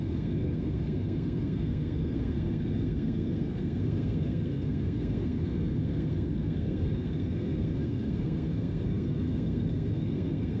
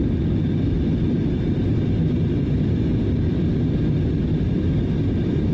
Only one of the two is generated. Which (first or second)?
first